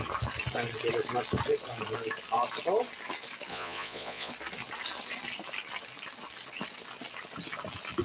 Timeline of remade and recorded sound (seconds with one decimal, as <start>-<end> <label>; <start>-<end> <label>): 0.0-3.5 recorded; 3.5-4.3 remade; 4.3-8.0 recorded